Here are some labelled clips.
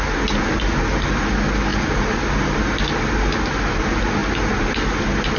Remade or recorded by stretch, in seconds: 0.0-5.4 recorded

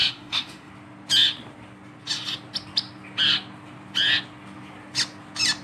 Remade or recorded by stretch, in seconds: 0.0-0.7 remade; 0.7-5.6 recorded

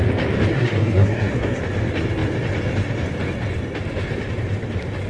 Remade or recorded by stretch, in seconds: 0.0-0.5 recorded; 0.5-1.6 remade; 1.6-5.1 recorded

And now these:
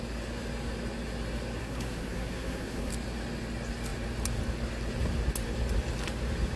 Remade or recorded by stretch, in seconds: 0.0-1.6 recorded; 1.6-2.9 remade; 2.9-6.6 recorded

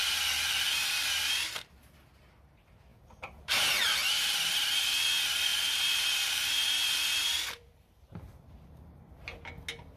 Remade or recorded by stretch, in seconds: 0.0-1.2 remade; 1.2-2.9 recorded; 2.9-3.7 remade; 3.7-5.5 recorded; 5.5-9.1 remade; 9.1-10.0 recorded

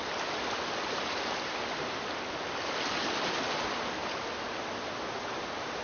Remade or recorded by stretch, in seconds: 0.0-5.8 recorded

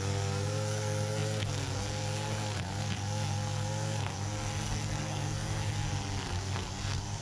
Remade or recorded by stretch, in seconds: 0.0-5.9 remade; 5.9-6.4 recorded; 6.4-7.2 remade

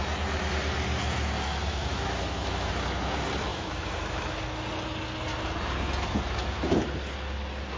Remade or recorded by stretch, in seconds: 0.0-1.7 recorded; 1.7-2.7 remade; 2.7-3.5 recorded; 3.5-4.4 remade; 4.4-7.8 recorded